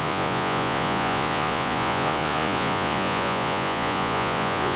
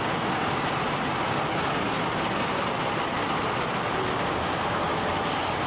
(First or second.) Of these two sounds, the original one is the second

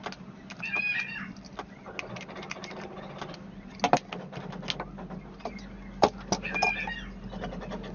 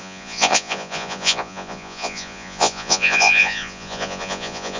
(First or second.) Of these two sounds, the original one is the first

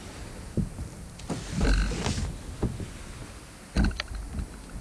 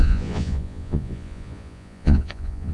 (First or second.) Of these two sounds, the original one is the first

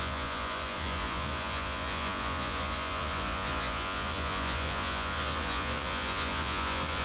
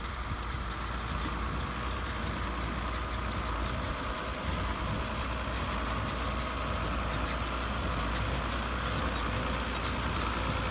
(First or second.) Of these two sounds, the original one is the second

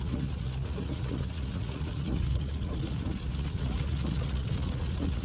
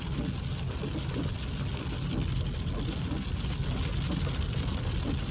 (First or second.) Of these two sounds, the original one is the second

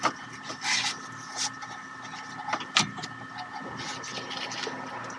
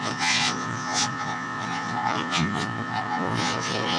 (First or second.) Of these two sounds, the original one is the first